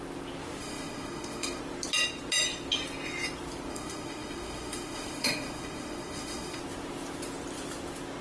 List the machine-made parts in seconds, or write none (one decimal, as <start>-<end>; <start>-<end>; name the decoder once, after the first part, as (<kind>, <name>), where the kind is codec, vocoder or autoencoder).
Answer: 0.6-1.6 (autoencoder, DAC-VAE); 3.7-6.6